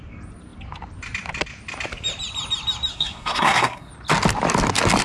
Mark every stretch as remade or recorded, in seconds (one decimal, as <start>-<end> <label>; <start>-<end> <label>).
0.0-2.9 recorded; 2.9-3.9 remade; 3.9-5.0 recorded